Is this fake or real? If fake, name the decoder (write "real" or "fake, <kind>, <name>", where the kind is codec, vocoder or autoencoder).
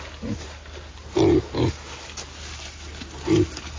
real